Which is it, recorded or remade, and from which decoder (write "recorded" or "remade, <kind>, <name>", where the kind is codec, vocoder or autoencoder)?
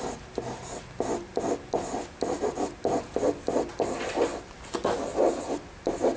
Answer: recorded